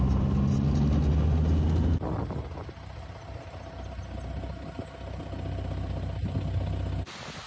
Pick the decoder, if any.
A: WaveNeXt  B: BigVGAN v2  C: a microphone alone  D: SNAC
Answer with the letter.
C